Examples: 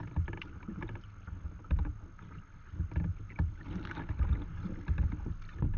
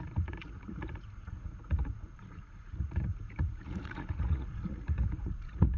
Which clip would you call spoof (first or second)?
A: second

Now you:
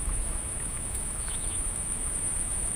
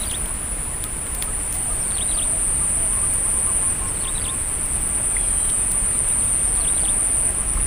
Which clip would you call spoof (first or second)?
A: first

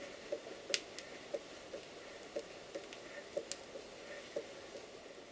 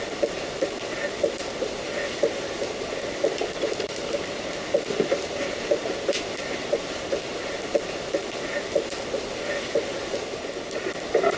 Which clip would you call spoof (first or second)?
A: second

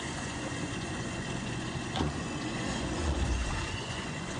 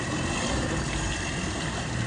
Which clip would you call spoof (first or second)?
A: first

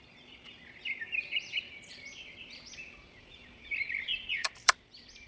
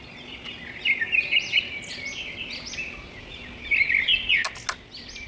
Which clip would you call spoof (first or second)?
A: first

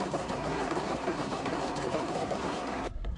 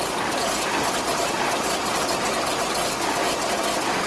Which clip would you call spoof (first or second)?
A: first